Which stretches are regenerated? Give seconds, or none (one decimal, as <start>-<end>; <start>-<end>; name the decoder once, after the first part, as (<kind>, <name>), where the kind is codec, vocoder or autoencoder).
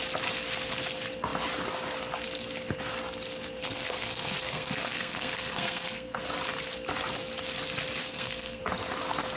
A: 3.6-6.2 (codec, SNAC); 8.0-8.6